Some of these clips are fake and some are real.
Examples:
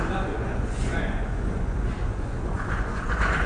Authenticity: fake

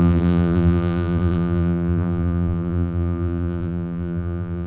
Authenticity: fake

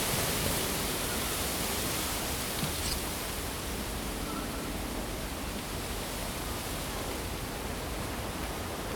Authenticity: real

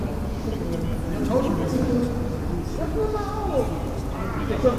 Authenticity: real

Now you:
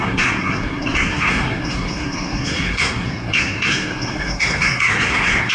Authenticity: fake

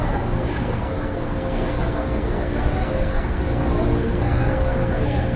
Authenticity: fake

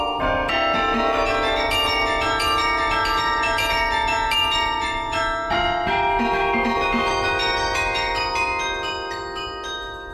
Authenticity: fake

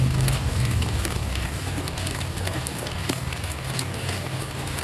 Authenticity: fake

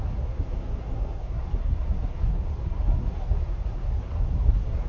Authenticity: fake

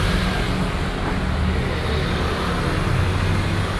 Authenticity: real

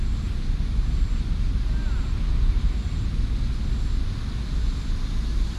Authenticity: real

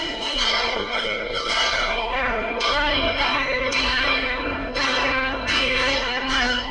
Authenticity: fake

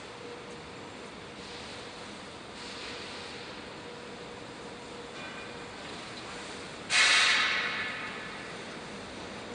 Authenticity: real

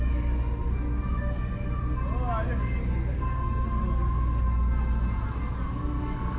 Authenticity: real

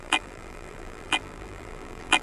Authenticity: fake